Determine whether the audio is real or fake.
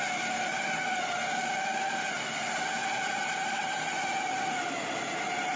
real